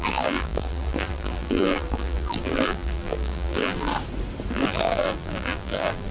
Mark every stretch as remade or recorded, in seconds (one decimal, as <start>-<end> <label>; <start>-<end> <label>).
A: 0.0-3.9 remade; 3.9-4.5 recorded; 4.5-6.1 remade